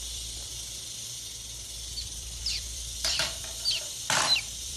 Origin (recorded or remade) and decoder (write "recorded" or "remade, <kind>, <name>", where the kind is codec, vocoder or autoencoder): remade, vocoder, BigVGAN v2